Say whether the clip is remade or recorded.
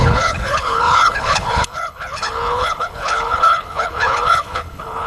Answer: remade